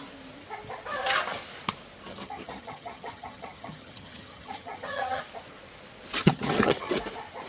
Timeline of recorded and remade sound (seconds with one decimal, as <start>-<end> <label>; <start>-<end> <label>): 0.0-2.1 recorded; 2.1-5.2 remade; 5.2-6.2 recorded; 6.2-6.9 remade; 6.9-7.5 recorded